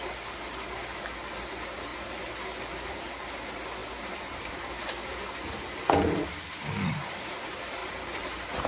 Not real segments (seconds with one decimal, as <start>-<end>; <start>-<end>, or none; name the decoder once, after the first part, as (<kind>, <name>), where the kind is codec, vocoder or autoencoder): none

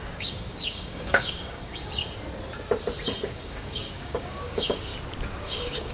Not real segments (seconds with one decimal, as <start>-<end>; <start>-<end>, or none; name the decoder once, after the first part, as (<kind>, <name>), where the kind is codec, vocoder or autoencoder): 0.0-2.0 (codec, DAC); 3.3-4.9; 5.4-5.9

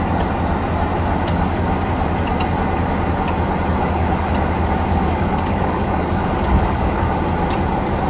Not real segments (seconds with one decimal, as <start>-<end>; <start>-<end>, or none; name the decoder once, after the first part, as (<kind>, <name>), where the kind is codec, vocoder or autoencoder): 3.8-4.3 (codec, DAC); 4.9-7.1

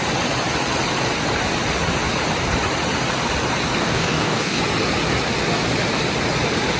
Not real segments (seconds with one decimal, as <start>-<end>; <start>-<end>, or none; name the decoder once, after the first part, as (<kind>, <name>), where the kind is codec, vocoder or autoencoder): 3.8-4.6 (codec, DAC)

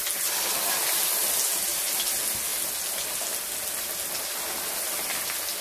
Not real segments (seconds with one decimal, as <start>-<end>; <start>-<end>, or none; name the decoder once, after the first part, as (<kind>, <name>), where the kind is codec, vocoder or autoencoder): none

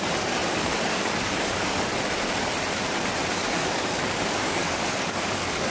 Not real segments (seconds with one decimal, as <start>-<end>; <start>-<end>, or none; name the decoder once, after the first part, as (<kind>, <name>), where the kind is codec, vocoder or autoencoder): 0.0-1.9 (codec, DAC); 3.3-5.7

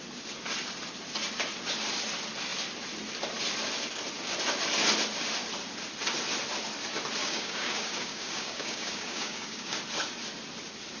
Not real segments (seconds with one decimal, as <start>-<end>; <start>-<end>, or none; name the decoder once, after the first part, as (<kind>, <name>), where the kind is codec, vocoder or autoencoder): 7.2-9.8 (codec, DAC)